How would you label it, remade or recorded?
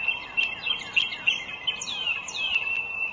recorded